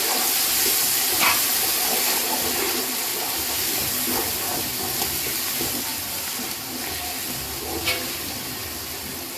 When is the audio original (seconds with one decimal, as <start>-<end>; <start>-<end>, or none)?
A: 0.0-9.4